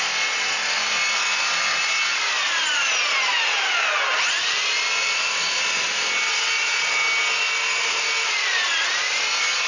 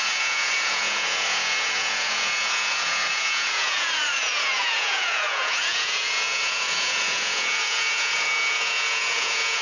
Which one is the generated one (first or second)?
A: second